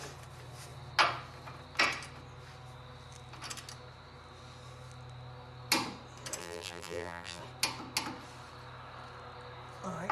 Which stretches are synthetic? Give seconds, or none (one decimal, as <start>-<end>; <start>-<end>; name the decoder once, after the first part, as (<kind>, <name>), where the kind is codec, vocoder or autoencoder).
6.4-7.4 (vocoder, BigVGAN v2)